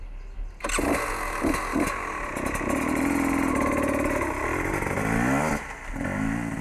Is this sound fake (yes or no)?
no